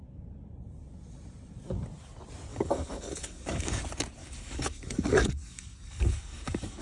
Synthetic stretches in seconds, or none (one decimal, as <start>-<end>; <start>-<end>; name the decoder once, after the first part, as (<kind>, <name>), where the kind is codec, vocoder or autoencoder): 2.5-3.8 (codec, DAC); 4.2-6.8